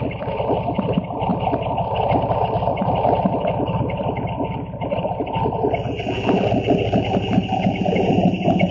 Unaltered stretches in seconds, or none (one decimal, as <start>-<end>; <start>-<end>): 0.0-8.7